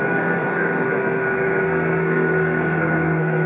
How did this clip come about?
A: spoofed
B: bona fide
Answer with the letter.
A